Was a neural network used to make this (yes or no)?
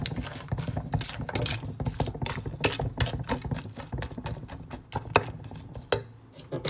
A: no